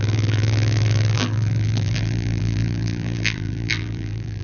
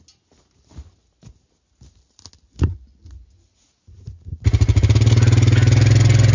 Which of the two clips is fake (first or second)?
first